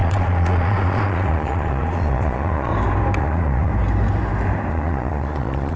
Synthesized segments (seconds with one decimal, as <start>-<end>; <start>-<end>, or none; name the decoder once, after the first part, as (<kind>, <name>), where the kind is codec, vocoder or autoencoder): 0.0-2.7 (vocoder, Vocos); 3.2-3.7; 4.7-5.8